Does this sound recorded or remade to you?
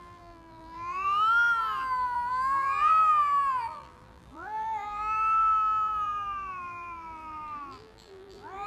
remade